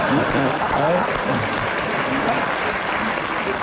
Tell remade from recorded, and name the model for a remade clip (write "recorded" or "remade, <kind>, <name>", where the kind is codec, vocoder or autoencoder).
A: recorded